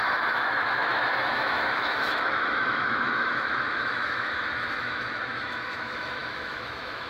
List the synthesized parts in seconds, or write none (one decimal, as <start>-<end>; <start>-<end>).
0.0-7.1